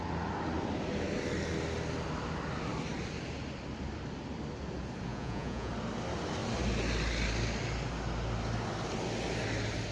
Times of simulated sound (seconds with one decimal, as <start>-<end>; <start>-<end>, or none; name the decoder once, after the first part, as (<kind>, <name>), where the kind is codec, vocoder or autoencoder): 5.1-5.7 (vocoder, Vocos)